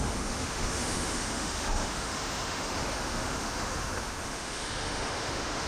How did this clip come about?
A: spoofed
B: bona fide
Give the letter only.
A